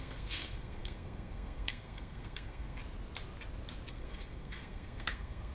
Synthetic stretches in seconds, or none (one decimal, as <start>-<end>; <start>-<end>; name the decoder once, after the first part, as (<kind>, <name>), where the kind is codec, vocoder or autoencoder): 0.0-2.8 (codec, SNAC); 3.9-5.5